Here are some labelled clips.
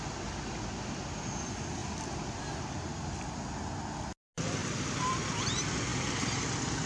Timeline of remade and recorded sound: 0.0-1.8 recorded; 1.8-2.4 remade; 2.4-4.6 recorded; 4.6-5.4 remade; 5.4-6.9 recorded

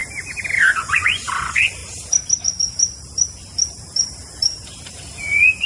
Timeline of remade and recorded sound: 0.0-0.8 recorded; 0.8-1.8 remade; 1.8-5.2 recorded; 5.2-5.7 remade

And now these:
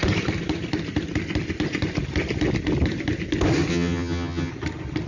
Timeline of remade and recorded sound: 0.0-3.7 recorded; 3.7-4.5 remade; 4.5-5.1 recorded